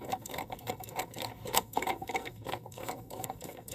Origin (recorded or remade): remade